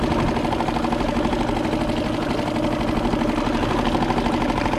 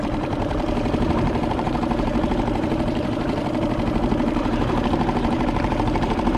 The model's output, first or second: second